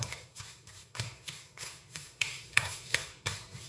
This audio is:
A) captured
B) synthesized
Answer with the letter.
B